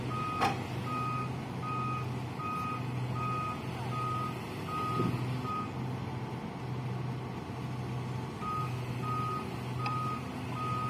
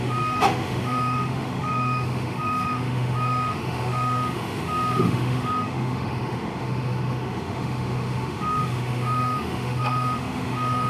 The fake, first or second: second